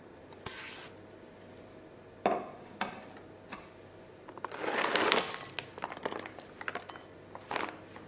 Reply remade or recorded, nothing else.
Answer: recorded